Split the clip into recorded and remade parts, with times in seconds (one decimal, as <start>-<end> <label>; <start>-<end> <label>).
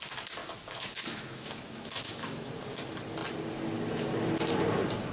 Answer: 0.0-0.4 recorded; 0.4-2.5 remade; 2.5-5.1 recorded